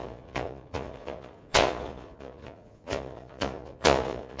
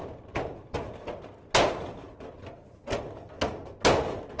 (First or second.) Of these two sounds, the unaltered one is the second